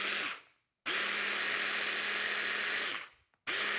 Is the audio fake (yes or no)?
no